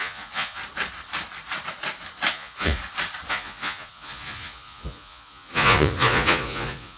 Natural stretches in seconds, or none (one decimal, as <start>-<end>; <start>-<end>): 0.6-2.3; 2.8-3.3